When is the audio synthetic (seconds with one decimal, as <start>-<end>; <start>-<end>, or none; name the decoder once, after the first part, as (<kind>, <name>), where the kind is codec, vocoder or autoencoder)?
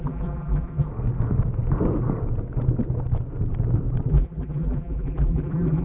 0.0-0.9 (vocoder, BigVGAN v2); 4.1-5.8